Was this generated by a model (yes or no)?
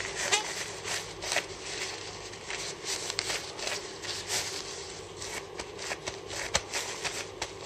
no